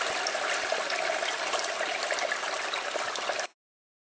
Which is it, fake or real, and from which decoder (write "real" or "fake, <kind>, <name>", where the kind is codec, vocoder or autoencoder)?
real